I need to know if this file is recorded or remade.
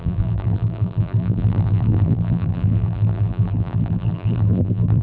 remade